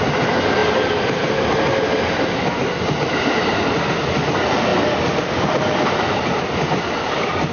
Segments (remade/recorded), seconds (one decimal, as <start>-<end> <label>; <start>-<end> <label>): 0.0-7.5 recorded

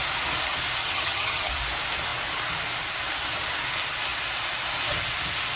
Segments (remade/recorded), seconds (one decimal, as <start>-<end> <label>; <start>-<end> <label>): 0.0-0.8 recorded; 0.8-1.5 remade; 1.5-5.6 recorded

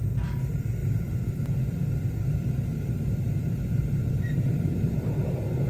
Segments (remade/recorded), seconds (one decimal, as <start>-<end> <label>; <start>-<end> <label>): 0.0-5.7 recorded

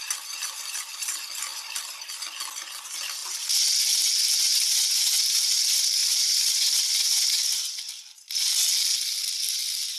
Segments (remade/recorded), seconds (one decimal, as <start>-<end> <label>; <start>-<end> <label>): 0.0-6.0 recorded; 6.0-8.0 remade; 8.0-10.0 recorded

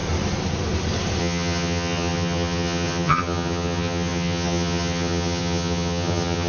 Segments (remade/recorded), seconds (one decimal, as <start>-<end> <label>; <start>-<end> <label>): 0.0-1.2 recorded; 1.2-6.5 remade

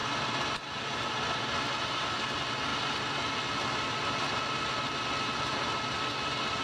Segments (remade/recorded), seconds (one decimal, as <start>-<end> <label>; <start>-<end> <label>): 0.0-0.8 remade; 0.8-6.6 recorded